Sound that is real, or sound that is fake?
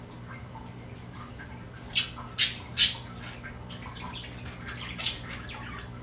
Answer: real